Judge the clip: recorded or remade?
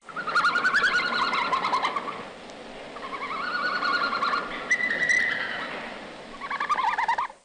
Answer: recorded